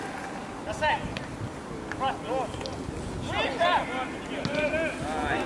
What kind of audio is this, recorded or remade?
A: recorded